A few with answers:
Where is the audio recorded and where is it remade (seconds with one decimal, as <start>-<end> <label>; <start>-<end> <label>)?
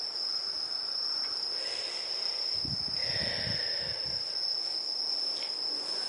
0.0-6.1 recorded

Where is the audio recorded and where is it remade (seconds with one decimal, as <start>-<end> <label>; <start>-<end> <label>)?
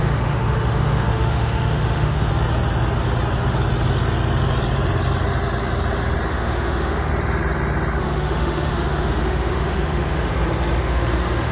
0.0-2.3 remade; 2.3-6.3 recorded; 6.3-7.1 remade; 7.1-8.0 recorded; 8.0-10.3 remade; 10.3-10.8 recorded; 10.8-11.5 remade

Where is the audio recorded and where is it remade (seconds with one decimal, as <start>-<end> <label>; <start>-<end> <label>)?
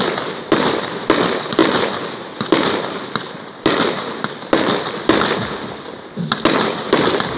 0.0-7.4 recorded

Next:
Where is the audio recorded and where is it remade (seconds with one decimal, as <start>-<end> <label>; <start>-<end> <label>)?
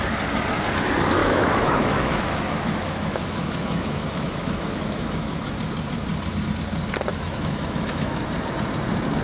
0.0-1.2 recorded; 1.2-5.5 remade; 5.5-7.1 recorded; 7.1-8.2 remade; 8.2-9.2 recorded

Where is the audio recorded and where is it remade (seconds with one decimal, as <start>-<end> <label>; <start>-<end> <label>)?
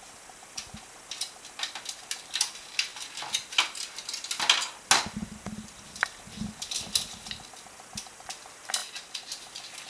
0.0-9.9 recorded